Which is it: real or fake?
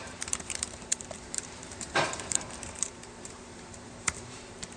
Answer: fake